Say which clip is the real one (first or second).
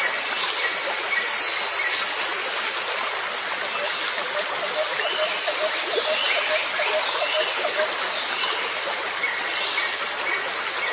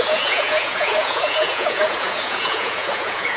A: first